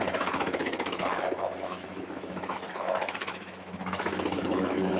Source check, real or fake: fake